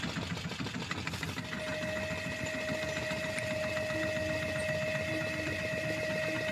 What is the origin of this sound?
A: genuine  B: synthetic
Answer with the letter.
A